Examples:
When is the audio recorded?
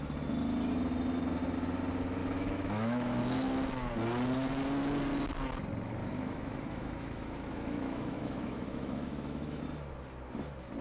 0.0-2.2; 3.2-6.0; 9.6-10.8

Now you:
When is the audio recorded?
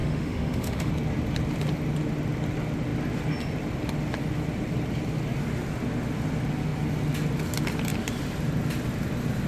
0.9-9.5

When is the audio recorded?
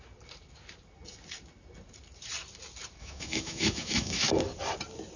0.0-3.0; 4.3-5.2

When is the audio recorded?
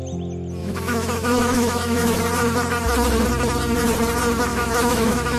0.0-0.6; 2.2-4.5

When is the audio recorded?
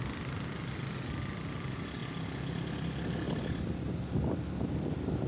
0.0-5.3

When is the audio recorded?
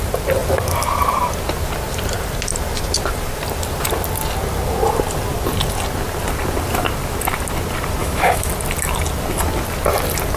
0.0-8.0; 8.5-10.4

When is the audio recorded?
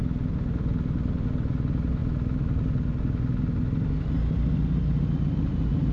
0.0-5.9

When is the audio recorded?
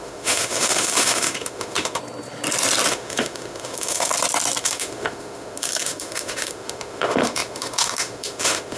2.0-2.9; 4.1-4.6